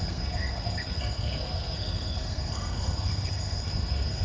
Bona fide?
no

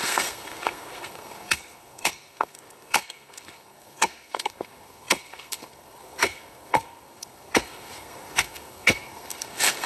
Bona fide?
no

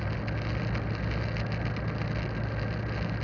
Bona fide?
yes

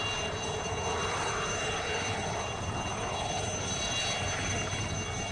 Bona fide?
yes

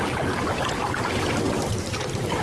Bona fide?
yes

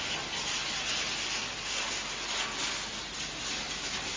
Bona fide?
yes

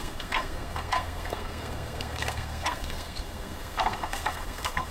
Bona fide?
no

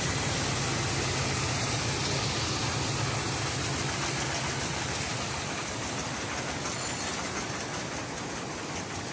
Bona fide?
yes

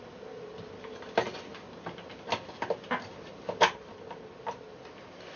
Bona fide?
yes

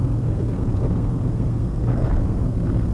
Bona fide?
no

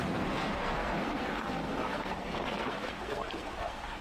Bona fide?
no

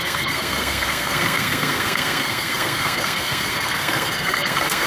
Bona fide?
no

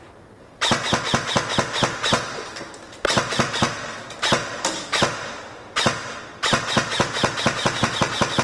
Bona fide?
yes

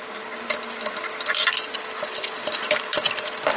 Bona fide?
yes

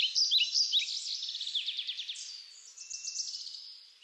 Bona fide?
yes